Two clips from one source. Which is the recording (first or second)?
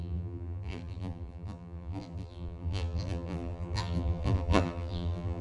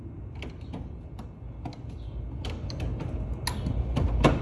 second